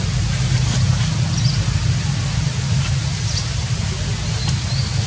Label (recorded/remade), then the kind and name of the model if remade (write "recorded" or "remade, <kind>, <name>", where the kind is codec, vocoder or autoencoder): recorded